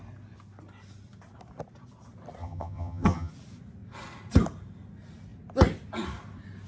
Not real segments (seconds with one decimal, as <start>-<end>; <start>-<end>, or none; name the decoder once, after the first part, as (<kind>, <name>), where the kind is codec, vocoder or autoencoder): 2.4-3.3 (vocoder, HiFi-GAN)